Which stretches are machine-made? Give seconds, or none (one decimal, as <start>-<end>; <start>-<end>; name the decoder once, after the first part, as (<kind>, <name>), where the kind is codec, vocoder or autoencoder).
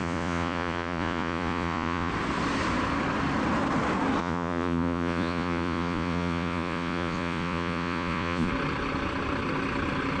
0.0-2.1 (vocoder, Vocos); 4.2-8.5